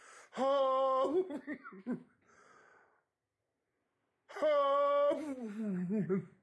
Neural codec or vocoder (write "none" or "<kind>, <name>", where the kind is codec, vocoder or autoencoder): none